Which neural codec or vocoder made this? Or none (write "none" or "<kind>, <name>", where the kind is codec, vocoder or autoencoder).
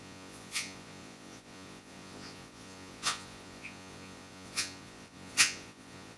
vocoder, Vocos